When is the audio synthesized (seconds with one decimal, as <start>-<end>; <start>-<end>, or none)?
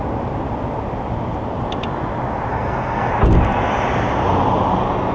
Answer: 2.5-3.1